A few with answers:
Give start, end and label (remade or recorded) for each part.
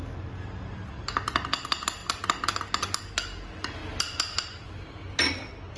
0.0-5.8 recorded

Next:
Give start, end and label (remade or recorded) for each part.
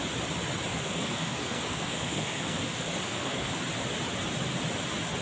0.0-0.7 recorded; 0.7-3.5 remade; 3.5-5.2 recorded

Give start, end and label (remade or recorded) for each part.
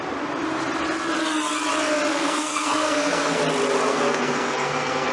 0.0-2.1 recorded; 2.1-3.4 remade; 3.4-3.9 recorded; 3.9-5.1 remade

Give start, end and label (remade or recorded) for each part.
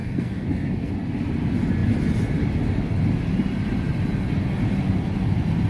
0.0-0.9 remade; 0.9-5.7 recorded